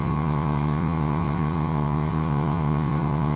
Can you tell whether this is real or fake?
fake